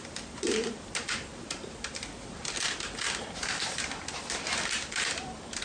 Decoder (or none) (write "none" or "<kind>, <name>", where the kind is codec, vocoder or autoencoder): none